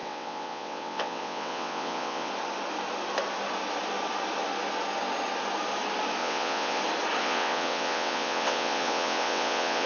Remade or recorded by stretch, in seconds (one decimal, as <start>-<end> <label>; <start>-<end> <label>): 0.0-2.3 remade; 2.3-6.2 recorded; 6.2-6.8 remade; 6.8-7.2 recorded; 7.2-9.9 remade